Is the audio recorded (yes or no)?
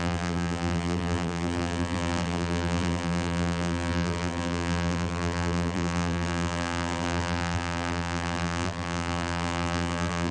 no